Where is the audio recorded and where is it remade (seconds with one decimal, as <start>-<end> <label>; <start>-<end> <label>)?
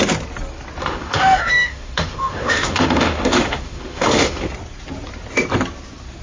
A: 0.0-0.8 recorded; 0.8-4.5 remade; 4.5-6.2 recorded